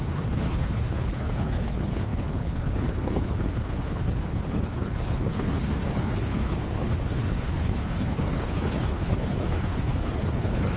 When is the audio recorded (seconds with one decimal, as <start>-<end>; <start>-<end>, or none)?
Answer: none